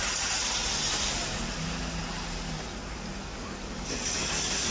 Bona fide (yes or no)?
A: yes